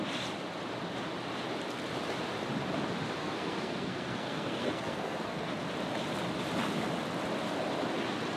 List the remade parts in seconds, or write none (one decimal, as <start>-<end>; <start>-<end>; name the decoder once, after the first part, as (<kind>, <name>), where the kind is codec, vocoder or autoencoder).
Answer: 3.2-5.5 (codec, SNAC)